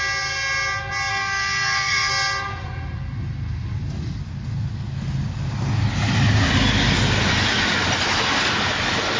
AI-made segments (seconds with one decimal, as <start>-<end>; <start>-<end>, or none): 1.1-2.1